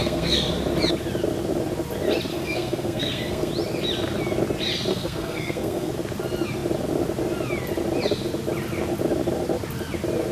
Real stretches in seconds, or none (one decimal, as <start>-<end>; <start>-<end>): 0.5-2.3; 3.5-4.9; 5.9-10.3